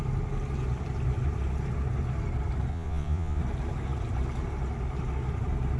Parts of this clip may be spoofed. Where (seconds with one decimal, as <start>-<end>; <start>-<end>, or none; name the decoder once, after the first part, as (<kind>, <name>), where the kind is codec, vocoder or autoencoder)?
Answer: 2.7-3.4 (vocoder, Vocos)